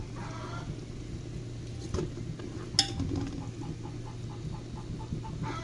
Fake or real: real